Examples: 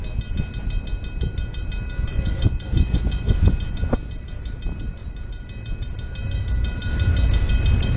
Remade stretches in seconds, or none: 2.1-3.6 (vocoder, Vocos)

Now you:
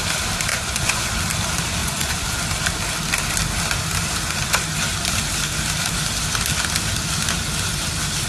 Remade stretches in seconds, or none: 0.5-1.1 (vocoder, Vocos); 1.8-2.4

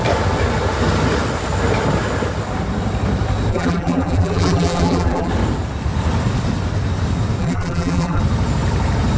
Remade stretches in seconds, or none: 3.5-5.3 (vocoder, BigVGAN v2); 7.4-8.2

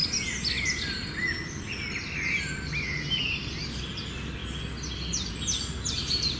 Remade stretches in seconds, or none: none

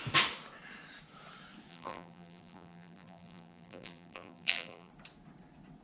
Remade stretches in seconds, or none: 1.7-4.9 (vocoder, BigVGAN v2)

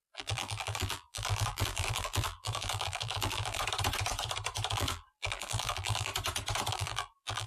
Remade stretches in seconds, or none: 0.0-3.6 (vocoder, BigVGAN v2); 4.7-6.1; 6.7-7.5

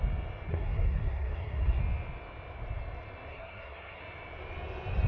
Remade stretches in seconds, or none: 0.5-1.8 (codec, SNAC); 3.3-4.0

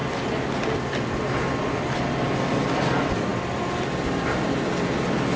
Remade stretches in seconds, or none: none